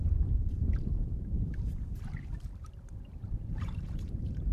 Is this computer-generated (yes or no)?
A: yes